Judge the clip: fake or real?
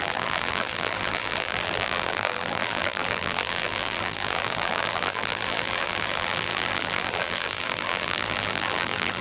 fake